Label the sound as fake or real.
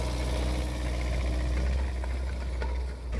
real